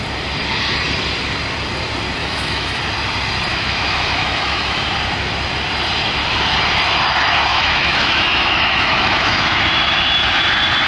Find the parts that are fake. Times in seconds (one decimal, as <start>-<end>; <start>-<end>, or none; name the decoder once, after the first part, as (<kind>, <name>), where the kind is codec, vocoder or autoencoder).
2.2-2.8 (autoencoder, DAC-VAE); 3.5-4.8; 7.5-9.6